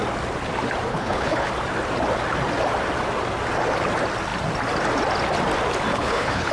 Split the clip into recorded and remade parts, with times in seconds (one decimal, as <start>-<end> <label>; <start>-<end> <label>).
0.0-0.9 recorded; 0.9-1.5 remade; 1.5-5.9 recorded; 5.9-6.5 remade